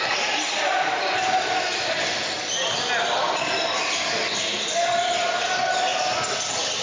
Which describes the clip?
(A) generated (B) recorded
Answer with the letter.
B